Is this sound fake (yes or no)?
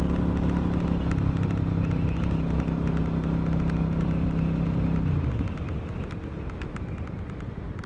no